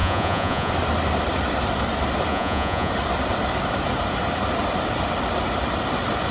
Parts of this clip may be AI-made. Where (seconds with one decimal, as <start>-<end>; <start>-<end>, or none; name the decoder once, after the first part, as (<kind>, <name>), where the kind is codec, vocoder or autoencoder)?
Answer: 0.0-0.7 (vocoder, Vocos); 2.3-2.9

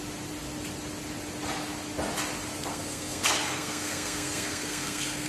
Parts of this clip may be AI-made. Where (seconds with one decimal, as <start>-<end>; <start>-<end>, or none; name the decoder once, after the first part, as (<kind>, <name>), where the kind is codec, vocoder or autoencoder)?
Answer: 2.7-5.3 (codec, SNAC)

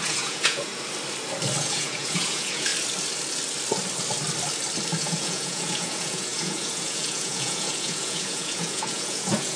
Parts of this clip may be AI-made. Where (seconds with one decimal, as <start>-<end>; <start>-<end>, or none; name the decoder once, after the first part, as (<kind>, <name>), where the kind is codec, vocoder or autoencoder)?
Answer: 0.0-0.7 (vocoder, Vocos); 1.6-2.7; 5.0-9.6

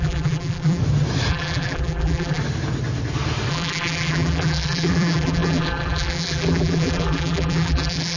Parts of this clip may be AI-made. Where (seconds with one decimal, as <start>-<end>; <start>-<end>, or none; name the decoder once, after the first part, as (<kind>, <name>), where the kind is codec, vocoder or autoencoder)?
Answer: 0.0-0.8 (vocoder, BigVGAN v2); 1.3-2.4; 3.5-8.2

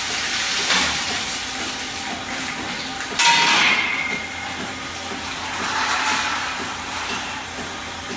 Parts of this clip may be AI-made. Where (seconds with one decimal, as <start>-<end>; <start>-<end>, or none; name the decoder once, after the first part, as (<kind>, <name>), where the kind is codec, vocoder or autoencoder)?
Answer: 1.4-2.1 (vocoder, BigVGAN v2)

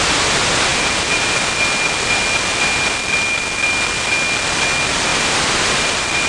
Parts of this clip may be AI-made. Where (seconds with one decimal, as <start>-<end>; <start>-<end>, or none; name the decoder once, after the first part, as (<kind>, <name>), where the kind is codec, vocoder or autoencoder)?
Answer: 0.7-1.5 (vocoder, BigVGAN v2); 5.1-6.3